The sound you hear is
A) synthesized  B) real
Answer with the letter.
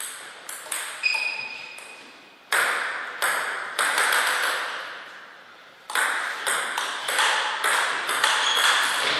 B